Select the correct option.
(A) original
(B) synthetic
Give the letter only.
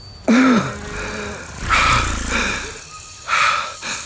A